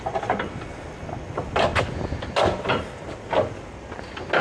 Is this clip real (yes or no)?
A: yes